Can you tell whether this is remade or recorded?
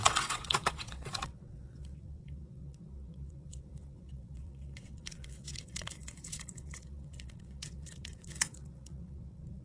remade